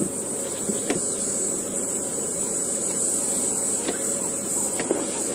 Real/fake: fake